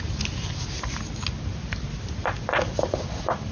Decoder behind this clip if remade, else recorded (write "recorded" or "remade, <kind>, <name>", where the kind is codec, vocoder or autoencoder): recorded